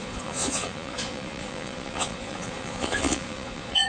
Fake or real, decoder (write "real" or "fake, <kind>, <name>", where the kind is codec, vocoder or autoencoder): fake, vocoder, Vocos